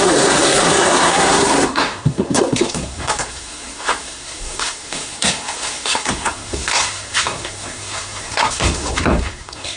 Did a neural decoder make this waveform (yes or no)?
yes